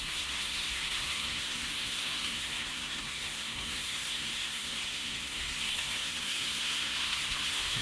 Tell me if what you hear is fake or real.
fake